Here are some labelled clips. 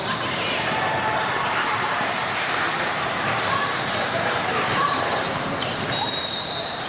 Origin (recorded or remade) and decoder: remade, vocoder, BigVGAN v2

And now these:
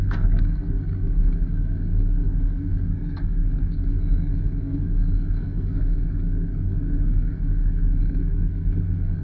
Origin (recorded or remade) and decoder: remade, codec, SNAC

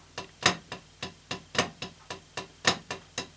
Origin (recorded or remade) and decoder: recorded